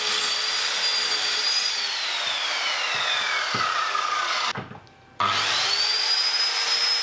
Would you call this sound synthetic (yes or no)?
no